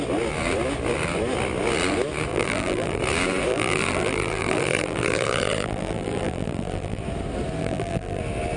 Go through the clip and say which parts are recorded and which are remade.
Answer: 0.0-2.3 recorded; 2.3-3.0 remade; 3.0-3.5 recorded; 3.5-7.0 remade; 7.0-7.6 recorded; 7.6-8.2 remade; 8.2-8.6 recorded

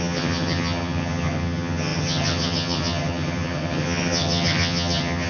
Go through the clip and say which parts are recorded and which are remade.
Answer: 0.0-5.3 remade

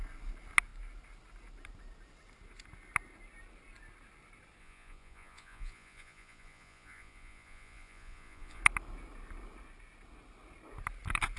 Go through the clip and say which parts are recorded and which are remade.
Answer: 0.0-4.6 recorded; 4.6-8.6 remade; 8.6-11.4 recorded

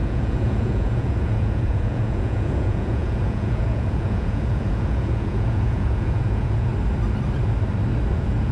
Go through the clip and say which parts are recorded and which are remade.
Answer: 0.0-6.7 remade; 6.7-8.1 recorded; 8.1-8.5 remade

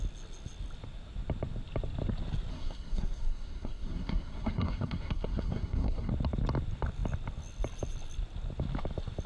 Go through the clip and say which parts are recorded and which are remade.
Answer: 0.0-2.5 recorded; 2.5-6.1 remade; 6.1-9.3 recorded

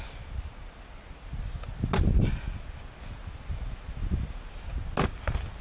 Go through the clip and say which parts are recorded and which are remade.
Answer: 0.0-5.6 recorded

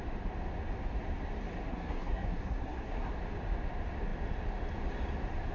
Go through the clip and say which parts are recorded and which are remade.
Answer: 0.0-1.7 recorded; 1.7-3.1 remade; 3.1-5.5 recorded

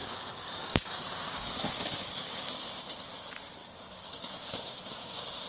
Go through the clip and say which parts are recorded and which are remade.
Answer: 0.0-2.8 remade; 2.8-3.6 recorded; 3.6-5.5 remade